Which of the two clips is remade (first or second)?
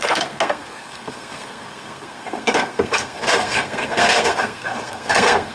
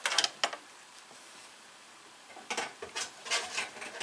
first